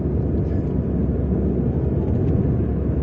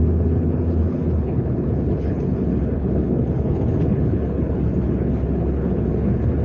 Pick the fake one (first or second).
second